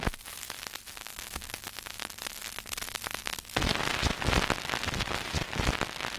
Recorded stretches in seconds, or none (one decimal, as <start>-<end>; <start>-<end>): 0.0-1.0; 2.1-6.2